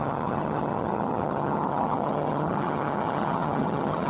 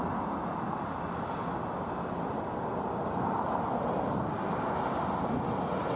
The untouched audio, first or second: second